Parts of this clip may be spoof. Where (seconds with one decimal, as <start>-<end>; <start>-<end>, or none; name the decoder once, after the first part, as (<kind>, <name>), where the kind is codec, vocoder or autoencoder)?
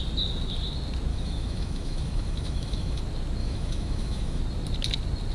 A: 1.1-3.0 (autoencoder, DAC-VAE); 3.4-4.4